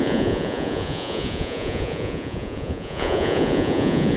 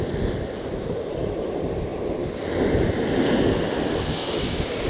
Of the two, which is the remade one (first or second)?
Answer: first